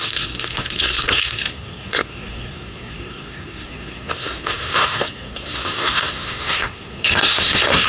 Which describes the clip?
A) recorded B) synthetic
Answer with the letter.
B